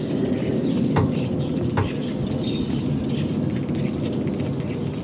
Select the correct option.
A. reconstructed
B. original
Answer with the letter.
B